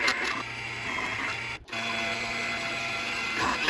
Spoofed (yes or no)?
no